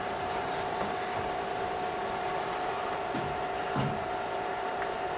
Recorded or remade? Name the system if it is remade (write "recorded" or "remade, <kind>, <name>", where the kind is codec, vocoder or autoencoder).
recorded